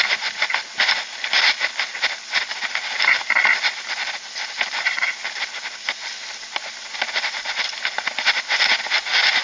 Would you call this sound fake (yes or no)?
no